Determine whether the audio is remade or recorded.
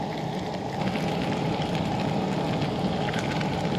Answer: recorded